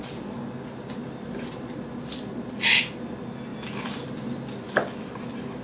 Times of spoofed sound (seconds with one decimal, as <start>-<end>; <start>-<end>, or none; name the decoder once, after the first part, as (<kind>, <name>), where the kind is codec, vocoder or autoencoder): 1.0-1.7 (vocoder, BigVGAN v2)